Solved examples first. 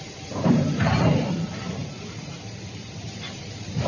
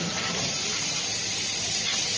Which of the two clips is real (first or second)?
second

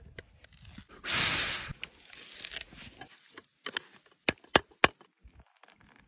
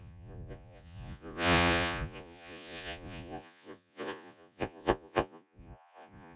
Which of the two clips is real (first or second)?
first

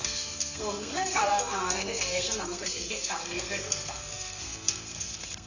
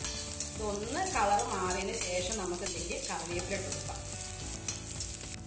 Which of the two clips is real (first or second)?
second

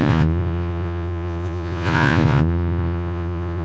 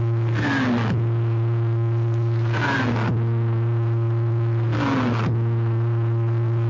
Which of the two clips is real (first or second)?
second